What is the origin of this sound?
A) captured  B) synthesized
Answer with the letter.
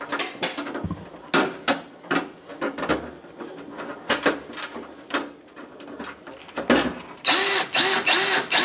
A